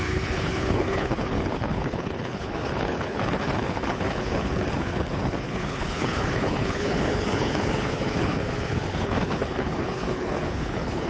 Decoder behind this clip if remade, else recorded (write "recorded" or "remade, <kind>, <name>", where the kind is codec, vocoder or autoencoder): remade, codec, HILCodec